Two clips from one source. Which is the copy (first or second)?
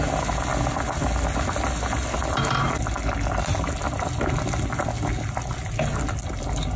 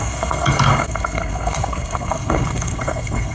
second